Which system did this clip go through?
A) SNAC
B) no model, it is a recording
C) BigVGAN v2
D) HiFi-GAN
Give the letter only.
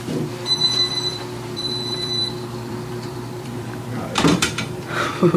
C